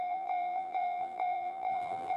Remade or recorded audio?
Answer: remade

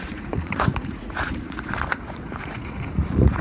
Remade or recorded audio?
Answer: remade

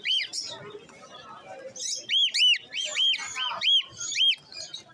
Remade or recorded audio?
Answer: recorded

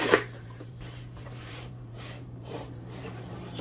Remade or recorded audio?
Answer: remade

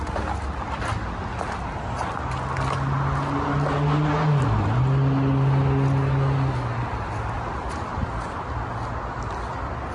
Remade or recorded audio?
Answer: recorded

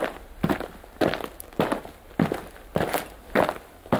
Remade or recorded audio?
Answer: recorded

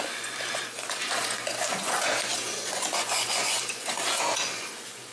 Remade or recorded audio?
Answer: remade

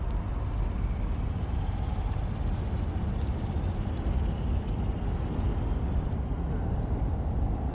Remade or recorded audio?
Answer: recorded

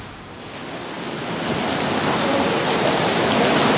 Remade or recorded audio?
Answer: recorded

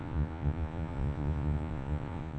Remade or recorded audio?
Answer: remade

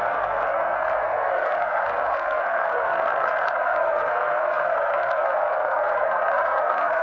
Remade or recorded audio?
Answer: remade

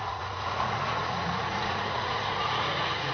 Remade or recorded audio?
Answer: remade